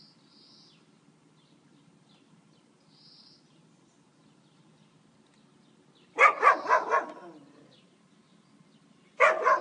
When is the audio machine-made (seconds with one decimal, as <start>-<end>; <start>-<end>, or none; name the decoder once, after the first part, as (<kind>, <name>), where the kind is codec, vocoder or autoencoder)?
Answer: none

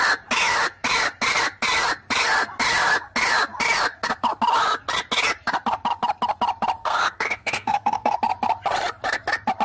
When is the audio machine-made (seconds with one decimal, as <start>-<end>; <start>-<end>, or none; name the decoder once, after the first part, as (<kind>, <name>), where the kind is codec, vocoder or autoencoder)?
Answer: 6.8-8.2 (codec, SNAC)